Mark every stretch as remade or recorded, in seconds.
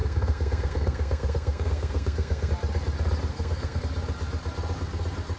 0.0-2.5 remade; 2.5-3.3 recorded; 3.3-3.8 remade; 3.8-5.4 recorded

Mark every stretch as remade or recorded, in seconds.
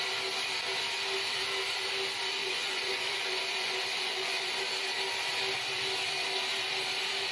0.0-2.4 recorded; 2.4-4.6 remade; 4.6-7.3 recorded